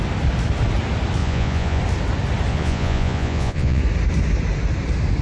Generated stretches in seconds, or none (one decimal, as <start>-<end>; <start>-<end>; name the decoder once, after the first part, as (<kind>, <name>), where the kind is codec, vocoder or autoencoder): 1.2-1.8 (vocoder, Vocos); 2.5-3.8